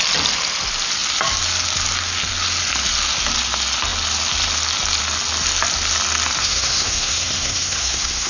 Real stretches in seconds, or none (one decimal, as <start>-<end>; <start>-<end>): 0.0-6.4